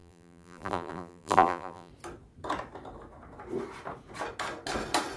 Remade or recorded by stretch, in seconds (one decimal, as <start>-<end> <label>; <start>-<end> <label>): 0.0-1.9 remade; 1.9-5.2 recorded